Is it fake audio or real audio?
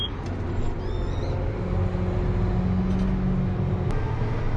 real